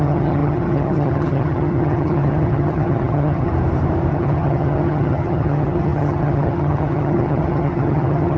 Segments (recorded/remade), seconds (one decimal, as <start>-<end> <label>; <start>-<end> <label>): 0.0-3.5 remade; 3.5-4.1 recorded; 4.1-8.4 remade